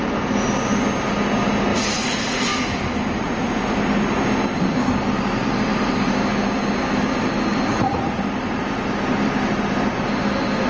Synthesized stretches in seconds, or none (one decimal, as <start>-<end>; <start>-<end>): 1.7-2.4; 7.7-8.2